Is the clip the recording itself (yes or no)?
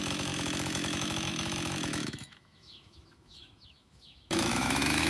no